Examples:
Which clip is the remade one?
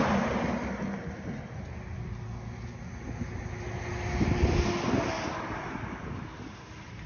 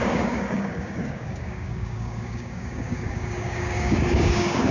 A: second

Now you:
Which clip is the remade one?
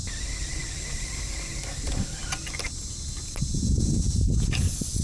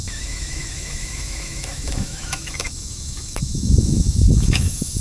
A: second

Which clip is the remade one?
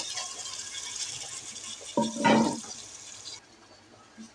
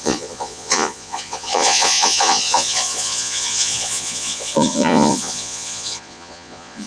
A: second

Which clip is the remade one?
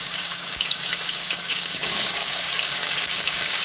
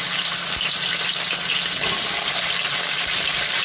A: first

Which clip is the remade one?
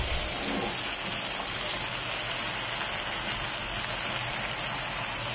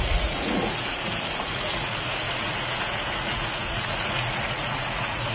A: second